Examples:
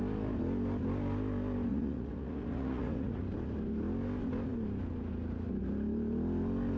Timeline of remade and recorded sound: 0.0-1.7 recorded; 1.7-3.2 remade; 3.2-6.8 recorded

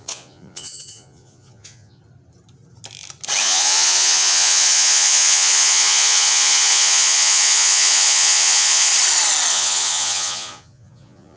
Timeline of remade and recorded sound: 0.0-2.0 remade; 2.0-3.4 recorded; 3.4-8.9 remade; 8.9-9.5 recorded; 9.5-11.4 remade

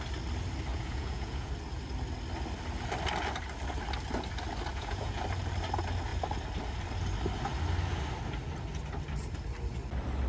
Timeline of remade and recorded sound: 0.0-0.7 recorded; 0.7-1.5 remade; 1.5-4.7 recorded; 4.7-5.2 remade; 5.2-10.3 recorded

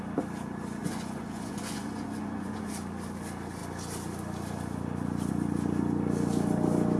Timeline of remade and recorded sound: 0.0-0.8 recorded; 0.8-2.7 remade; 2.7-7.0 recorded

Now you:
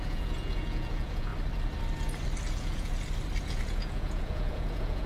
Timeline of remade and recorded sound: 0.0-1.3 remade; 1.3-2.5 recorded; 2.5-2.9 remade; 2.9-3.4 recorded; 3.4-5.1 remade

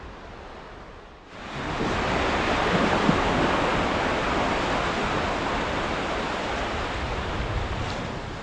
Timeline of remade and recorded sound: 0.0-8.4 recorded

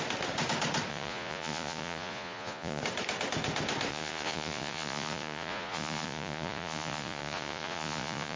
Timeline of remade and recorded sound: 0.0-0.9 recorded; 0.9-2.8 remade; 2.8-3.9 recorded; 3.9-8.4 remade

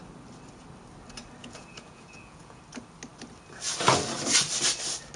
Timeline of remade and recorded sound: 0.0-1.4 recorded; 1.4-2.6 remade; 2.6-5.2 recorded